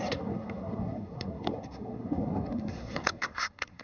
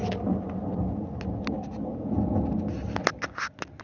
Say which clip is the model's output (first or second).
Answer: first